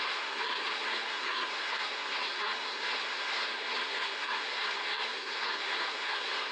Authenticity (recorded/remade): remade